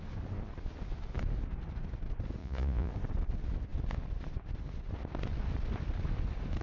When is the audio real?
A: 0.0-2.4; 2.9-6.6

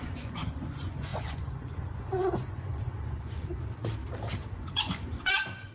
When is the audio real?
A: 3.8-4.5